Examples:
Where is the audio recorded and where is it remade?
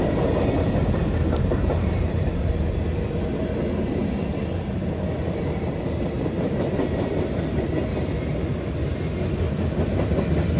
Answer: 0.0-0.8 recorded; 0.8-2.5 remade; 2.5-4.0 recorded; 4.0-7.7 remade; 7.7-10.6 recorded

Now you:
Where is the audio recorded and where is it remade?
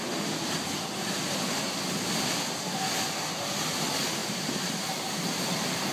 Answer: 0.0-4.2 recorded; 4.2-5.9 remade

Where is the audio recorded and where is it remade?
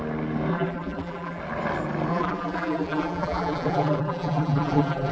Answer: 0.0-0.5 recorded; 0.5-1.4 remade; 1.4-2.1 recorded; 2.1-5.1 remade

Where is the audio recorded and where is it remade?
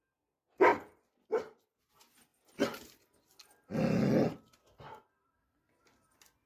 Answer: 0.0-0.7 recorded; 0.7-1.9 remade; 1.9-6.5 recorded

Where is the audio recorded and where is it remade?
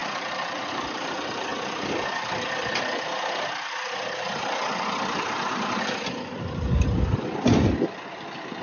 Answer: 0.0-1.5 remade; 1.5-5.8 recorded; 5.8-8.6 remade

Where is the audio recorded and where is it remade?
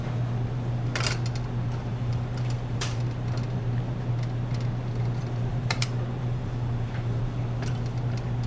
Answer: 0.0-1.9 recorded; 1.9-3.0 remade; 3.0-5.5 recorded; 5.5-7.2 remade; 7.2-8.5 recorded